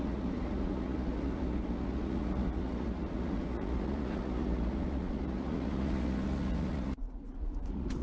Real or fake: fake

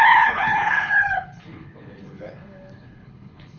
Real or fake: fake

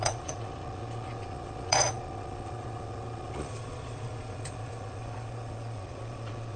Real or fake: fake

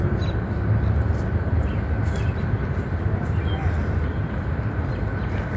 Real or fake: real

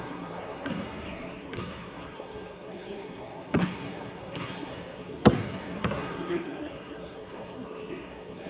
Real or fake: fake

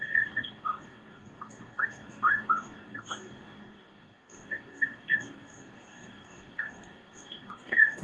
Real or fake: fake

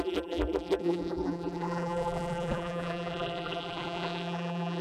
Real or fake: fake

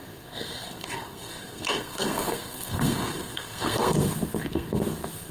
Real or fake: fake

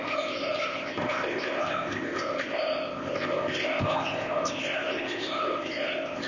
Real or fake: fake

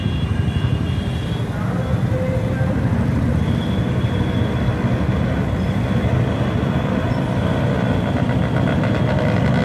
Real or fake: real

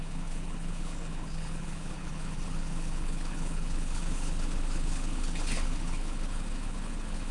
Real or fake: fake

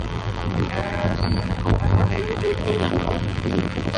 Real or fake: fake